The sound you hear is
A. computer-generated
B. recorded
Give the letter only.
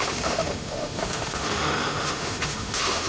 A